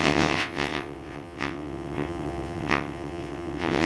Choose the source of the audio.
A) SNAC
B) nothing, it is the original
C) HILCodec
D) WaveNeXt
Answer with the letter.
D